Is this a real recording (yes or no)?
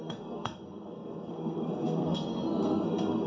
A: no